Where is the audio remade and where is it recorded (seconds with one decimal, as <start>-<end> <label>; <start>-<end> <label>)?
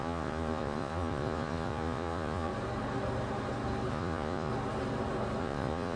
0.0-2.5 remade; 2.5-3.9 recorded; 3.9-4.5 remade; 4.5-5.4 recorded; 5.4-6.0 remade